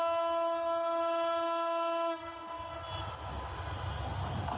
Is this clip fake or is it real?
real